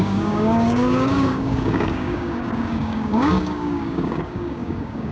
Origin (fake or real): fake